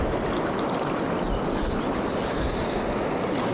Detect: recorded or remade recorded